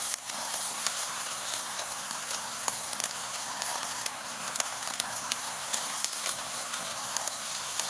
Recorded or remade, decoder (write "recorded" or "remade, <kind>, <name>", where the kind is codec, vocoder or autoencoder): remade, codec, SNAC